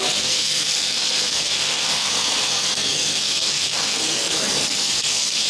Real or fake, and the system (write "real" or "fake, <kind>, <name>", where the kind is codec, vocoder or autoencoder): fake, codec, SNAC